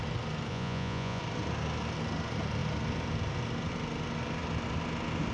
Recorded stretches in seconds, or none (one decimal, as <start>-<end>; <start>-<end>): 0.0-0.5; 1.2-5.3